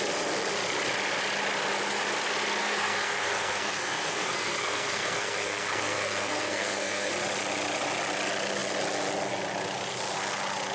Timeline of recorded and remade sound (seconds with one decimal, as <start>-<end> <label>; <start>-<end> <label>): 0.0-2.6 recorded; 2.6-7.1 remade; 7.1-10.7 recorded